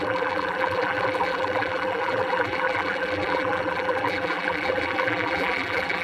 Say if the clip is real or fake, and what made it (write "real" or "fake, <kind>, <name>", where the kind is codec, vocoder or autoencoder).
fake, vocoder, BigVGAN v2